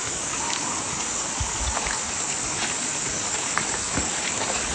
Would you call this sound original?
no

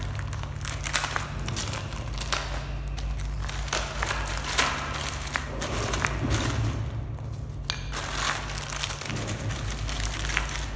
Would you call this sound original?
yes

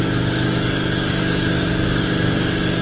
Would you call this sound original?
no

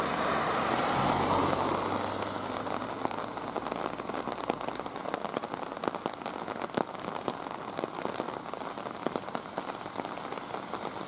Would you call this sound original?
yes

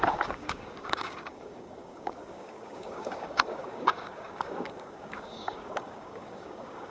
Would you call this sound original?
no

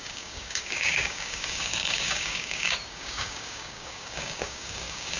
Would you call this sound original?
no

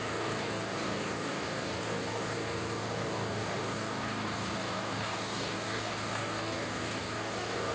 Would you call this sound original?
no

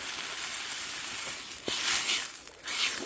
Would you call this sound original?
yes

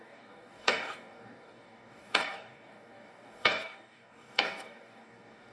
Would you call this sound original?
no